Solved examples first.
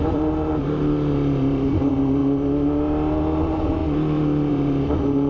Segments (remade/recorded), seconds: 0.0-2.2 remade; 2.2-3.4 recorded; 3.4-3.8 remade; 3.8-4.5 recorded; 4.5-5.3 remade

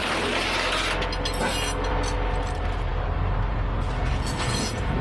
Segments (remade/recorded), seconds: 0.0-5.0 recorded

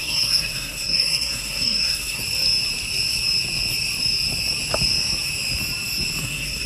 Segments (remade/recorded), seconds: 0.0-2.2 remade; 2.2-6.2 recorded; 6.2-6.7 remade